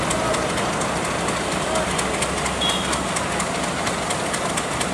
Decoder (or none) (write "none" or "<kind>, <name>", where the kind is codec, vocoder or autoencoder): none